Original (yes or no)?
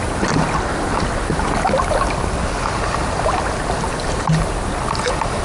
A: yes